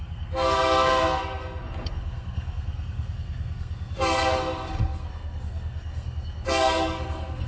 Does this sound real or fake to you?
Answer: fake